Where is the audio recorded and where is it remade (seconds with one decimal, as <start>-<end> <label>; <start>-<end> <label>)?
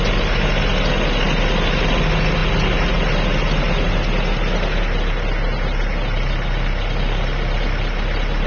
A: 0.0-8.5 recorded